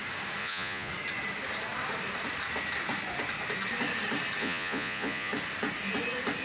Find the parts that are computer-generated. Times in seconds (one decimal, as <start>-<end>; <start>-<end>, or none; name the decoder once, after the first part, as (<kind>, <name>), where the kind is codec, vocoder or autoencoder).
0.4-0.9 (vocoder, Vocos); 4.4-5.3